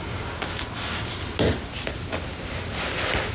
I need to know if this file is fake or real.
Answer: real